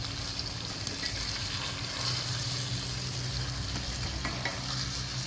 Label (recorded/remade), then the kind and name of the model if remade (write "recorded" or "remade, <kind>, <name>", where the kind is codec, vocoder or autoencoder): recorded